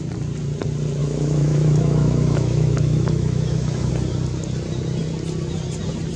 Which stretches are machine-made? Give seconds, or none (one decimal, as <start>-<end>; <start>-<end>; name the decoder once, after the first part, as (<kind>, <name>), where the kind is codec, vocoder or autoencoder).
1.0-3.9 (autoencoder, DAC-VAE)